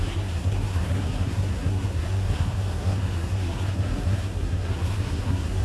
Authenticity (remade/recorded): remade